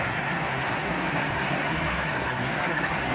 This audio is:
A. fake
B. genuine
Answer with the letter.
A